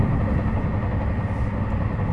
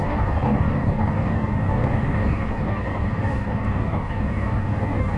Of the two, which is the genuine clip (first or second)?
first